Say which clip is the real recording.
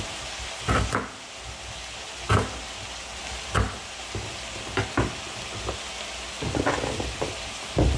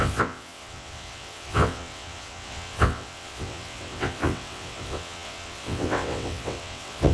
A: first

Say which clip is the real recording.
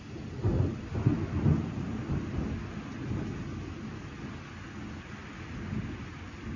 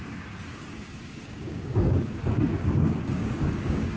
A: first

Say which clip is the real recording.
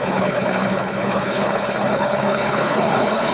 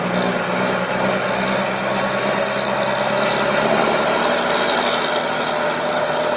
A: second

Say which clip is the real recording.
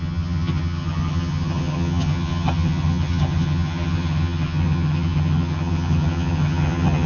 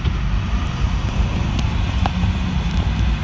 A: second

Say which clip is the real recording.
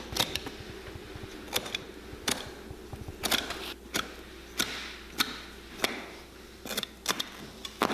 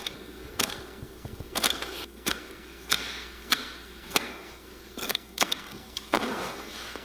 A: first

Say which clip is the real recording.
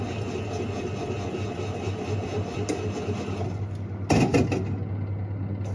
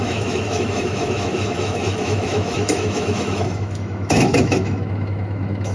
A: first